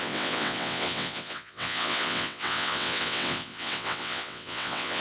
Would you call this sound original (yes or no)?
no